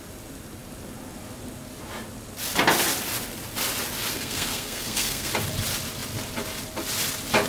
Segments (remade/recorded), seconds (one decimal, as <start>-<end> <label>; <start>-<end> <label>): 0.0-4.1 recorded; 4.1-5.3 remade; 5.3-7.5 recorded